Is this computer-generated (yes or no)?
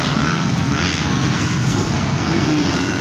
yes